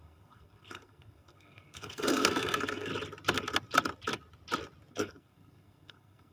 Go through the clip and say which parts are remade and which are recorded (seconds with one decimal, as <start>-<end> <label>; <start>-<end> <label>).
0.0-2.9 remade; 2.9-4.9 recorded; 4.9-6.3 remade